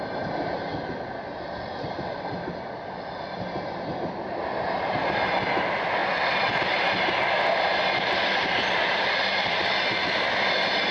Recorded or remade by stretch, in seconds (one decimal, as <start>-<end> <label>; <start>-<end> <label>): 0.0-10.9 recorded